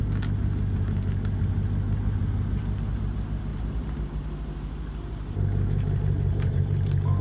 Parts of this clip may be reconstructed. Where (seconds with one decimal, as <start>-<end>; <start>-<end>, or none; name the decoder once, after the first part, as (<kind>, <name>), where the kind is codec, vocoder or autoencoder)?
3.5-7.2 (vocoder, BigVGAN v2)